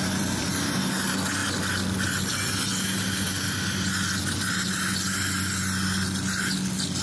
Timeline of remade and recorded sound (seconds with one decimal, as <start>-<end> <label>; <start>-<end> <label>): 0.0-7.0 recorded